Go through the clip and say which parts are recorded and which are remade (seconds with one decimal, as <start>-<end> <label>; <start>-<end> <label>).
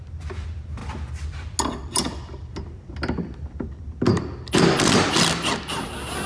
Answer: 0.0-6.3 recorded